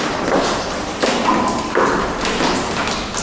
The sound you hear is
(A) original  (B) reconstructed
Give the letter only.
A